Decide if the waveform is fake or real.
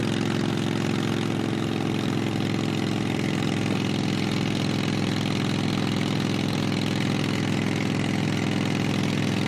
real